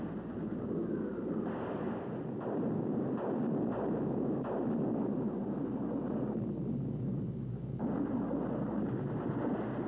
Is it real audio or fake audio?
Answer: real